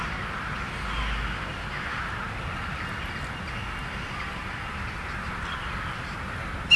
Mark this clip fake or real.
real